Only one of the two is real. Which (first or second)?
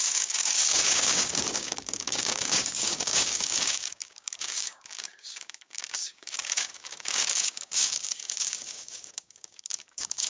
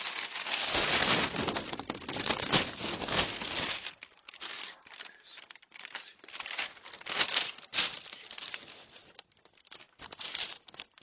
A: second